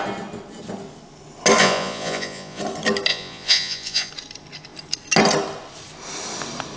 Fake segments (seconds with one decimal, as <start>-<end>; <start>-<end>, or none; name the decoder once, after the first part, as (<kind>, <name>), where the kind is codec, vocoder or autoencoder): 1.6-2.6 (vocoder, Vocos); 3.1-4.1